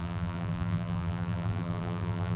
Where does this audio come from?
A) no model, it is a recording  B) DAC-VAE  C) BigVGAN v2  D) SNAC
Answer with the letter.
C